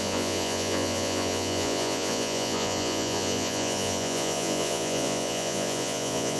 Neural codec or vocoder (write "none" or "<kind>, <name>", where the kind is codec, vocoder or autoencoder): vocoder, Vocos